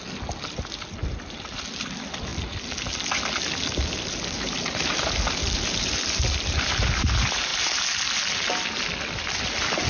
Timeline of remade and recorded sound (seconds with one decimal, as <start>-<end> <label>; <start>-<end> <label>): 0.0-9.9 recorded